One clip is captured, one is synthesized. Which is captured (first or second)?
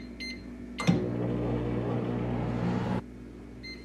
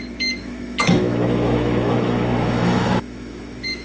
first